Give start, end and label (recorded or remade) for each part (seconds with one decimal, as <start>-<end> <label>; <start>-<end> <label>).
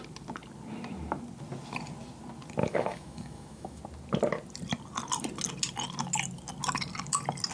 0.0-2.6 recorded; 2.6-3.8 remade; 3.8-7.5 recorded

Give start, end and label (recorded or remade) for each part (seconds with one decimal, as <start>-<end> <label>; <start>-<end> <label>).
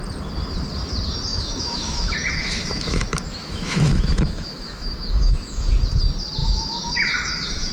0.0-1.3 recorded; 1.3-5.7 remade; 5.7-6.4 recorded; 6.4-7.7 remade